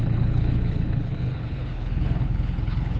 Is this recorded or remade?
remade